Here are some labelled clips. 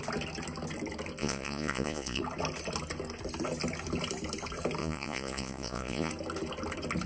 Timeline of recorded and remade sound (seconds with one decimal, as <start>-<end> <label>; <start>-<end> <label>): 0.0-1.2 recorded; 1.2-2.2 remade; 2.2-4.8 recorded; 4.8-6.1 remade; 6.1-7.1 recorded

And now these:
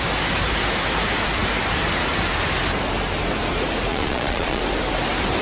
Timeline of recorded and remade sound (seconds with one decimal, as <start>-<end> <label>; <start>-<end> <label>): 0.0-3.9 recorded; 3.9-4.6 remade; 4.6-5.4 recorded

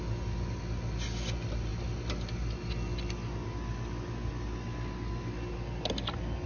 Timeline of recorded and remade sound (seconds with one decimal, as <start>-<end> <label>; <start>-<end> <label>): 0.0-6.5 recorded